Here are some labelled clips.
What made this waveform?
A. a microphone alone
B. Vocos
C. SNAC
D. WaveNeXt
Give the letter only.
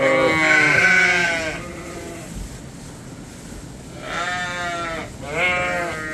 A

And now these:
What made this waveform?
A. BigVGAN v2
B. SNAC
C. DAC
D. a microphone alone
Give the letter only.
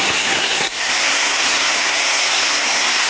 B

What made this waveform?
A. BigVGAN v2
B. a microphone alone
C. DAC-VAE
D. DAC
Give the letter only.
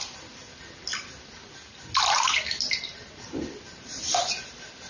B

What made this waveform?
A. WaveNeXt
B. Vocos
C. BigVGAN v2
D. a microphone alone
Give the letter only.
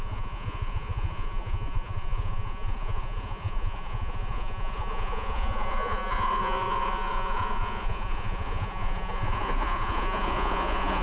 B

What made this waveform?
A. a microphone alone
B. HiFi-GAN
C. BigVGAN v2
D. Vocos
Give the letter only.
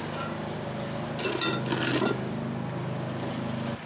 A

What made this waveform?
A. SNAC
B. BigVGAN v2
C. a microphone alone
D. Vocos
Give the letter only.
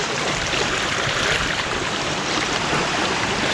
B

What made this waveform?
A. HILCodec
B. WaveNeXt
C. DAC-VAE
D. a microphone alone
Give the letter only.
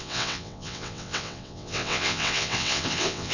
B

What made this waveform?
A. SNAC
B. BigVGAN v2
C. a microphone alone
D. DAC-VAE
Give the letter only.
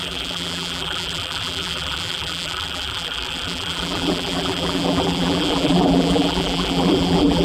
B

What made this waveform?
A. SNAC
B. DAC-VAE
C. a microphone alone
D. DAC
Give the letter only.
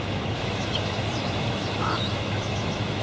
B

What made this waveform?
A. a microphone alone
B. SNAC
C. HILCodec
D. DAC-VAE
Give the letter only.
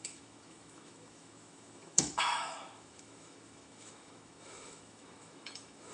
D